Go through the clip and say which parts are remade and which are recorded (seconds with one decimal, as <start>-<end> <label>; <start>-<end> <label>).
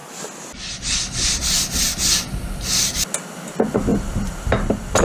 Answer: 0.0-3.9 recorded; 3.9-4.5 remade; 4.5-5.0 recorded